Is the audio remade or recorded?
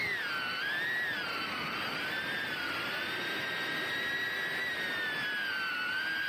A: recorded